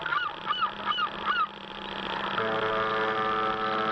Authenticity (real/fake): real